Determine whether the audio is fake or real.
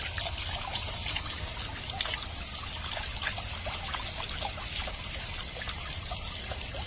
real